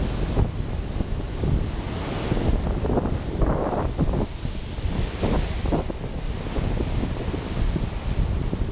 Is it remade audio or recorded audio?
recorded